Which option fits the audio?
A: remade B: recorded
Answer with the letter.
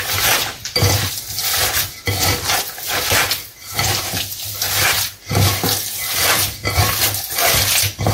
B